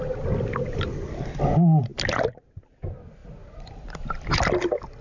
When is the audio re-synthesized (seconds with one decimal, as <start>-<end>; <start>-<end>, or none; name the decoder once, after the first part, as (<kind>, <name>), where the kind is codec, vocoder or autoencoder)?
none